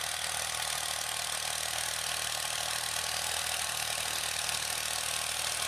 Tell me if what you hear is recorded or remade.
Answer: recorded